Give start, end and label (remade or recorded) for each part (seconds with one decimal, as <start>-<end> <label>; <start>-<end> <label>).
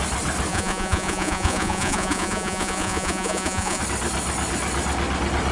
0.0-0.5 recorded; 0.5-3.8 remade; 3.8-5.5 recorded